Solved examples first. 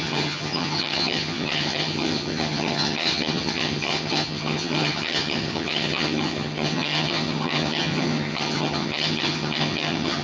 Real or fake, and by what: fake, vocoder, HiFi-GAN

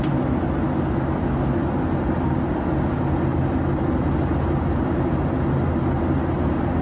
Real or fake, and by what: real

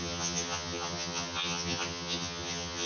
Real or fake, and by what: fake, vocoder, HiFi-GAN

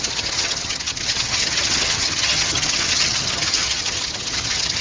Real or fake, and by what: fake, vocoder, HiFi-GAN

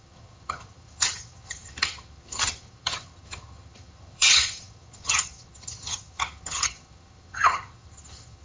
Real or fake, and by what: fake, vocoder, HiFi-GAN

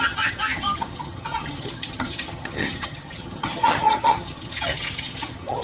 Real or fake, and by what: fake, vocoder, HiFi-GAN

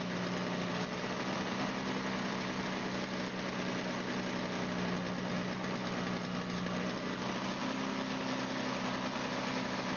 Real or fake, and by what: real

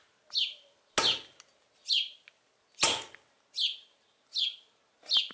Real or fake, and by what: real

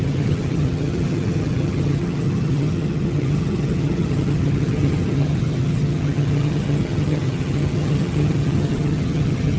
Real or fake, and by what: fake, vocoder, HiFi-GAN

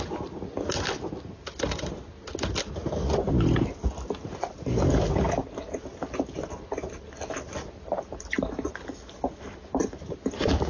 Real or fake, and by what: real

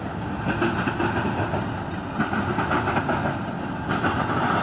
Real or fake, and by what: real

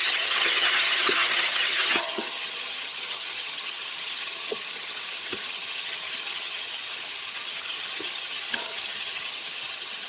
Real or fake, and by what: fake, vocoder, HiFi-GAN